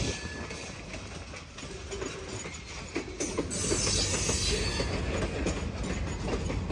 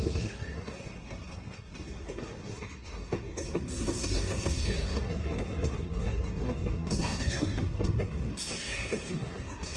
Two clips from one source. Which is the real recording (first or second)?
first